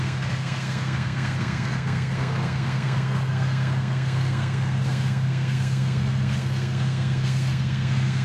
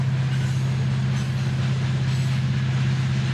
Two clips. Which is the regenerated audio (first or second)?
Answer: first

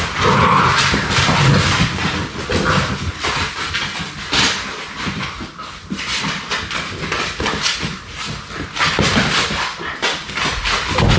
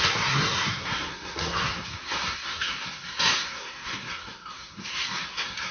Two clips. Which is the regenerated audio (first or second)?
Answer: second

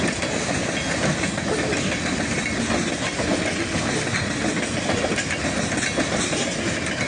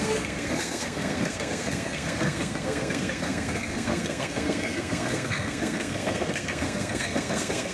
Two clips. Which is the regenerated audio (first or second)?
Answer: second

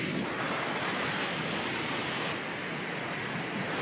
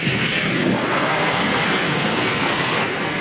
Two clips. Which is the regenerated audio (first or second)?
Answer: second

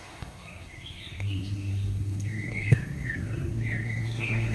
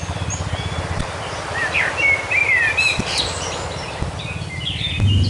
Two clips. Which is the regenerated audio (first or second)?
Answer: first